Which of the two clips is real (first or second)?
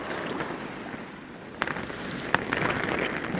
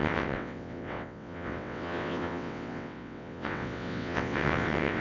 first